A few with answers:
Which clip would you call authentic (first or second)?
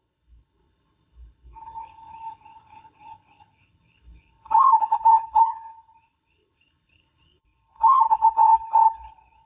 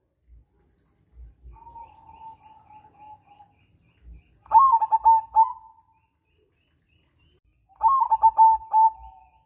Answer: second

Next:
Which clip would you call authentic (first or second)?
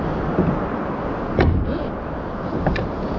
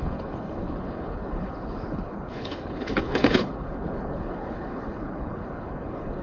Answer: first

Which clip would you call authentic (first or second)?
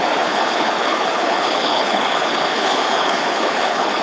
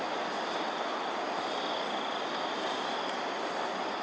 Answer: second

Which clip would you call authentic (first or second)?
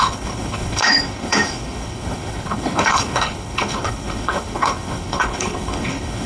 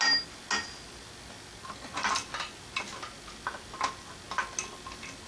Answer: second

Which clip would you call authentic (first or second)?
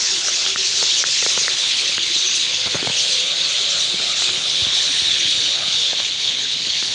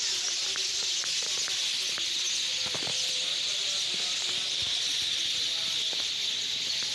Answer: second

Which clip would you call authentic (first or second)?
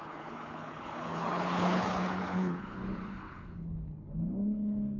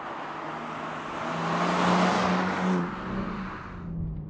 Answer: second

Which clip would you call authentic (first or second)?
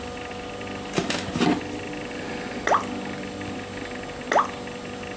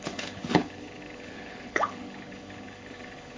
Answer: first